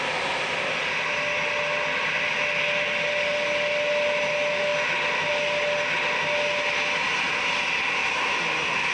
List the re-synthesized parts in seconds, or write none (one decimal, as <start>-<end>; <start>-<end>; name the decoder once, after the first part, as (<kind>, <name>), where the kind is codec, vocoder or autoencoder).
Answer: none